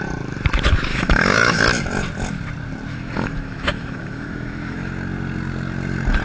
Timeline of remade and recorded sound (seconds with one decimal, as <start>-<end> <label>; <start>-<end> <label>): 0.0-0.9 recorded; 0.9-1.6 remade; 1.6-2.9 recorded; 2.9-4.9 remade; 4.9-6.2 recorded